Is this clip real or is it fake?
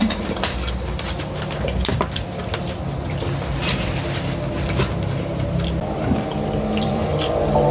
fake